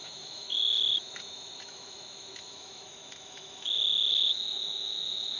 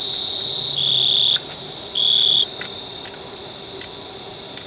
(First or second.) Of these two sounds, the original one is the second